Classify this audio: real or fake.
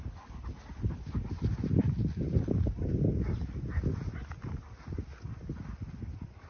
real